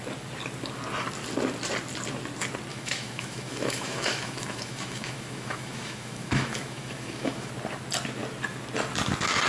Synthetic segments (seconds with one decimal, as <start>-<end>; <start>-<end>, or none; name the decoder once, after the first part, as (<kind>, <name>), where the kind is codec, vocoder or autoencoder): 2.7-7.5 (autoencoder, DAC-VAE)